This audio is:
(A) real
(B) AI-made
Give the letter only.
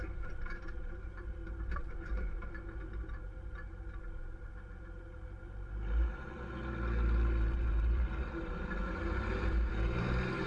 B